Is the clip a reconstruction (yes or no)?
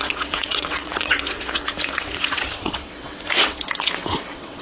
yes